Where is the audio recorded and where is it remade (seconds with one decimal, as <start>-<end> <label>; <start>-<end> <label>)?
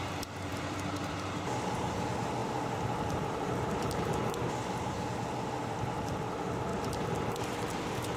0.0-0.5 recorded; 0.5-1.1 remade; 1.1-2.4 recorded; 2.4-4.9 remade; 4.9-6.7 recorded; 6.7-7.4 remade; 7.4-8.2 recorded